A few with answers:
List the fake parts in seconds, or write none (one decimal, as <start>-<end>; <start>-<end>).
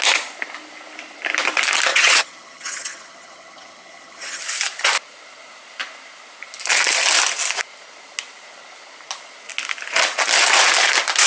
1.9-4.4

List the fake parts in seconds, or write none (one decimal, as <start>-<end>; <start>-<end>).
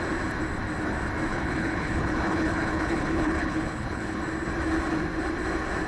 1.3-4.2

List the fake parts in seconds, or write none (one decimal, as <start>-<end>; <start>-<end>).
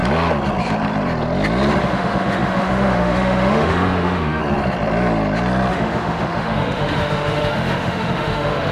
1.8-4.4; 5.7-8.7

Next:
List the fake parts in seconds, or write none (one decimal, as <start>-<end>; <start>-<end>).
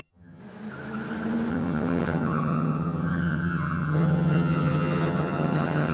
0.0-0.4; 1.5-5.9